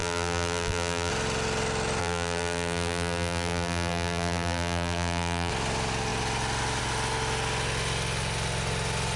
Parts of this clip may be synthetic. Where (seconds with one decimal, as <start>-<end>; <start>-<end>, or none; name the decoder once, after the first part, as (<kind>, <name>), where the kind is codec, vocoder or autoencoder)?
0.0-1.1 (vocoder, BigVGAN v2); 2.0-5.5